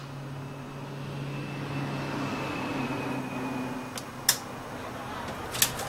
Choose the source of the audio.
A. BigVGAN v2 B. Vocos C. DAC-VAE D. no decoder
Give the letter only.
D